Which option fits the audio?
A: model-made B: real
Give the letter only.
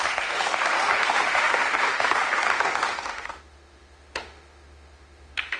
A